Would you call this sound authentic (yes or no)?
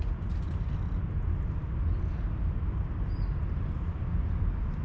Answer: yes